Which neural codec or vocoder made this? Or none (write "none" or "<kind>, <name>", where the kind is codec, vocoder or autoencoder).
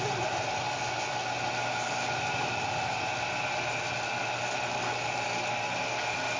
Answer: none